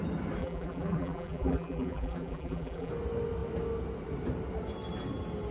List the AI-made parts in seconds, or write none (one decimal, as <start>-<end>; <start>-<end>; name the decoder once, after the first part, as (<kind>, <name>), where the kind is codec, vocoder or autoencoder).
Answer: 0.4-2.9 (vocoder, BigVGAN v2)